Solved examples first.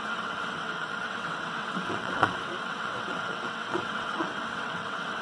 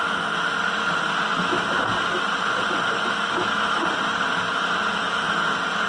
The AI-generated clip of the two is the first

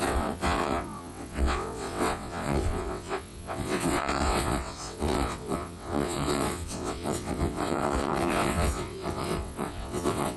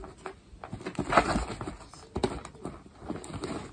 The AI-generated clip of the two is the first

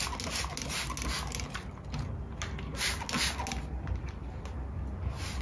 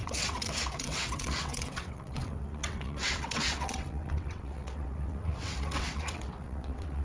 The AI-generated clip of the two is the second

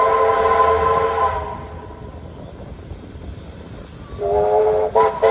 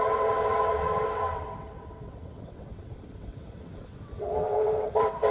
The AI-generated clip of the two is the second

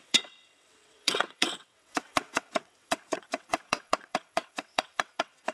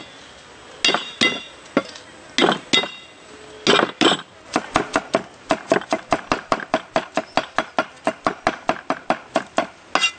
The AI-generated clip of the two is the first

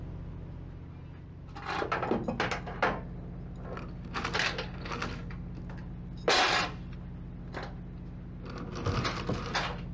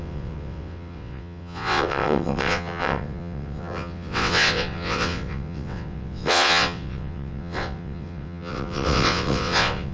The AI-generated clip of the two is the second